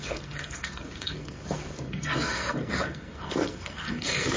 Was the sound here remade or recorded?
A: remade